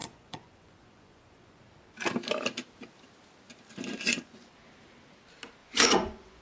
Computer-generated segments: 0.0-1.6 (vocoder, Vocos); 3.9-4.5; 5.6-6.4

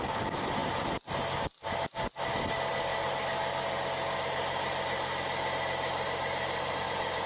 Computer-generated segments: none

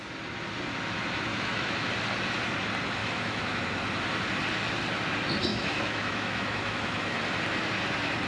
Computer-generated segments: 1.3-1.9 (autoencoder, DAC-VAE); 3.0-3.6; 5.5-7.2

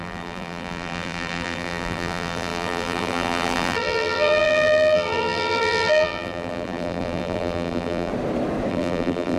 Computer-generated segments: 0.0-8.1 (vocoder, BigVGAN v2); 8.7-9.4

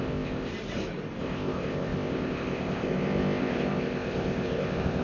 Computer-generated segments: 0.0-0.5 (codec, ZipCodec); 1.2-5.0

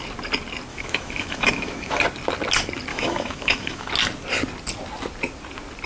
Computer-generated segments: 0.7-2.0 (autoencoder, DAC-VAE); 2.9-3.9

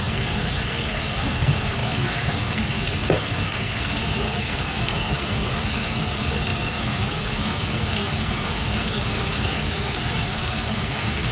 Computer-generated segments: 0.0-11.3 (codec, SNAC)

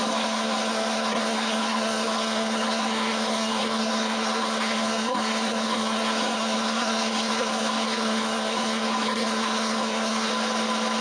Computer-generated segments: 0.0-10.3 (codec, SNAC)